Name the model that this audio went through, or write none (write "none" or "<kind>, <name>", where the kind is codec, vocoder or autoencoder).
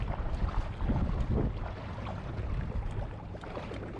vocoder, BigVGAN v2